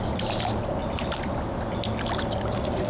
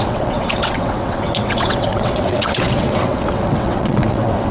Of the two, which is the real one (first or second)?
first